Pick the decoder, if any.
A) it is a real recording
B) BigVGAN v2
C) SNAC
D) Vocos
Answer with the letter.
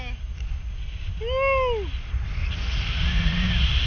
A